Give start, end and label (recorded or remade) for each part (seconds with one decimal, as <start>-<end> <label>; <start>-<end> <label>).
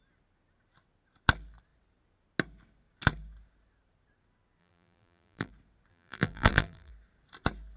0.0-4.6 recorded; 4.6-5.5 remade; 5.5-5.9 recorded; 5.9-6.9 remade; 6.9-7.8 recorded